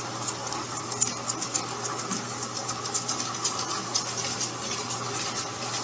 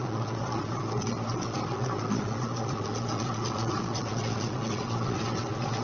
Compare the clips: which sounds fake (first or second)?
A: second